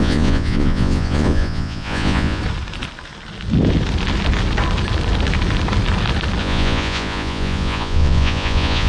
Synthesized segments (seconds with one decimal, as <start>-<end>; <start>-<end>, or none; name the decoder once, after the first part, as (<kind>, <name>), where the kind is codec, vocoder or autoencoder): 0.0-2.4 (vocoder, Vocos); 6.4-8.9